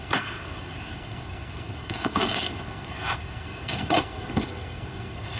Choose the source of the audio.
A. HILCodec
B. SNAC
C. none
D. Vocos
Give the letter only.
B